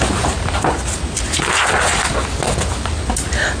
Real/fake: real